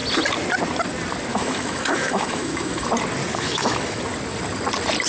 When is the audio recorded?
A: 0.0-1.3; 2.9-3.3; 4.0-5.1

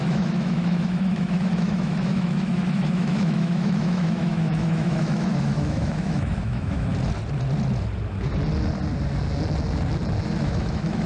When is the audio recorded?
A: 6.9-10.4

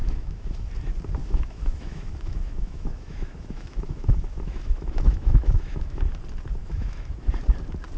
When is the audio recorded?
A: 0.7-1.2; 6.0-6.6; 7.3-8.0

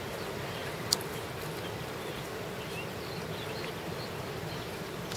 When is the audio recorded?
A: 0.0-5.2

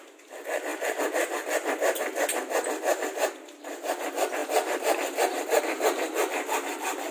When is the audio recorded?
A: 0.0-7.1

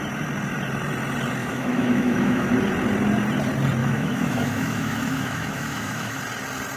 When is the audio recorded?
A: 0.0-1.4; 2.5-3.8; 6.2-6.8

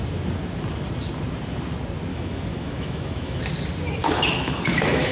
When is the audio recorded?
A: 0.0-2.1; 3.4-4.0

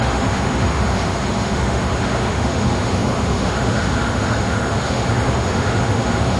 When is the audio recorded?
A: none